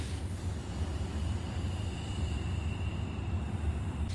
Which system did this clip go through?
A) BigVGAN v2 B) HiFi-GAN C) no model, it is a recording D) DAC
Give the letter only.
A